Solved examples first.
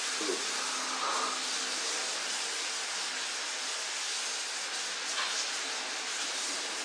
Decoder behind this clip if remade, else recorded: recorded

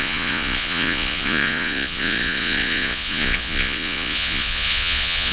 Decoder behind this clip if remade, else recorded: remade, vocoder, Vocos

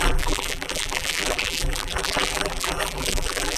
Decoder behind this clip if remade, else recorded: remade, vocoder, BigVGAN v2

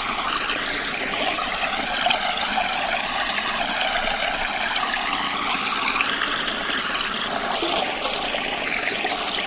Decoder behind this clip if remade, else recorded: recorded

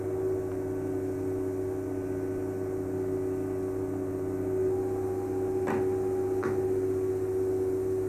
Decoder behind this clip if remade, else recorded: recorded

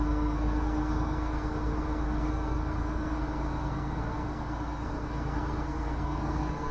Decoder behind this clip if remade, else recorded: remade, codec, SNAC